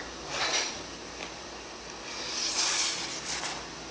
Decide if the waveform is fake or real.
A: real